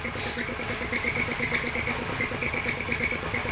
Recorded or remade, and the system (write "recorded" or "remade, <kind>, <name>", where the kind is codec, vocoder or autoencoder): recorded